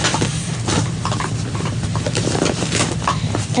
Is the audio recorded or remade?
recorded